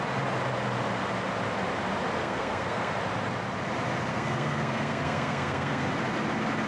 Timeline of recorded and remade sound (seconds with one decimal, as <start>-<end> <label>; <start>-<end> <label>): 0.0-2.2 recorded; 2.2-2.9 remade; 2.9-4.1 recorded; 4.1-5.9 remade; 5.9-6.7 recorded